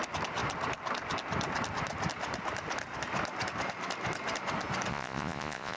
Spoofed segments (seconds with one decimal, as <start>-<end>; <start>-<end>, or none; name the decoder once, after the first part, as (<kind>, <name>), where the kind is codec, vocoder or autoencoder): 4.9-5.8 (vocoder, Vocos)